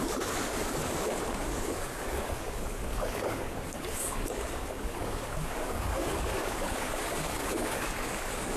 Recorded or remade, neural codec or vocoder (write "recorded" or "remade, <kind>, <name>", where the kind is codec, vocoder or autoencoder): remade, codec, DAC